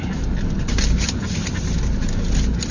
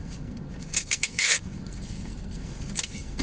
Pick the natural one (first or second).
first